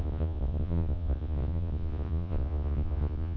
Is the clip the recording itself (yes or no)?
no